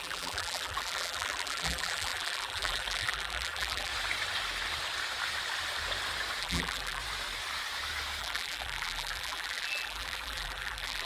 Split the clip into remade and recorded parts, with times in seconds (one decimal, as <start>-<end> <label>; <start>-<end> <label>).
0.0-3.9 remade; 3.9-6.4 recorded; 6.4-7.0 remade; 7.0-8.2 recorded; 8.2-11.0 remade